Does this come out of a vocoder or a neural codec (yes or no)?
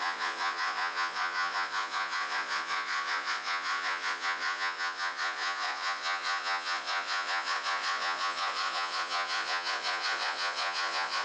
yes